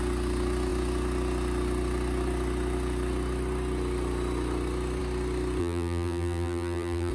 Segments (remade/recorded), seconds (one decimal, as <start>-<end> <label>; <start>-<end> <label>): 0.0-5.6 recorded; 5.6-7.1 remade